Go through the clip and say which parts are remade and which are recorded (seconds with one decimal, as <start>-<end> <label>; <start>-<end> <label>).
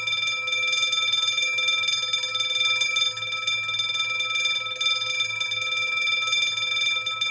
0.0-7.3 recorded